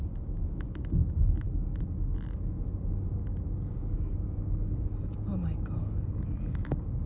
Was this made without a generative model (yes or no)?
no